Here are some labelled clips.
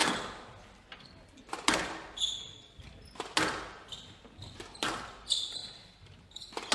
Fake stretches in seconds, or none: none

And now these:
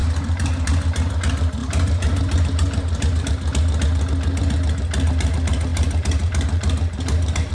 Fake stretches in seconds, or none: 0.0-1.2; 1.6-3.2; 5.7-7.5

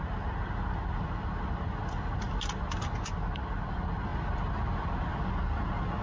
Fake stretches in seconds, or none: 4.1-4.8

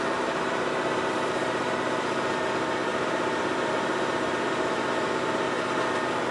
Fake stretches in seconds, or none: 2.9-5.5

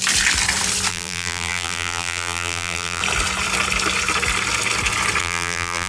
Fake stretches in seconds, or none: 0.9-3.0; 5.2-5.9

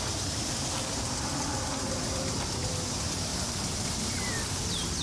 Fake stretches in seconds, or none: none

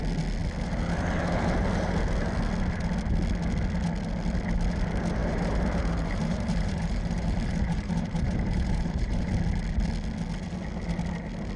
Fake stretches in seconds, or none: 5.2-9.3

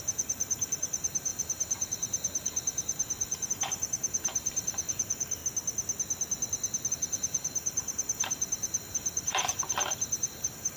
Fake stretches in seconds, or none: 0.0-5.4; 6.9-10.8